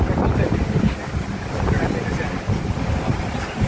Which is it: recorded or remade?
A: recorded